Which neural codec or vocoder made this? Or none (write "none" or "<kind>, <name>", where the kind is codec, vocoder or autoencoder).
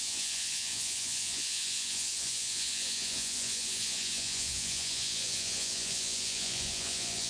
vocoder, Vocos